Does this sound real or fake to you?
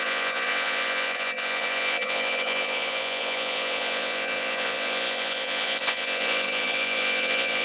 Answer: fake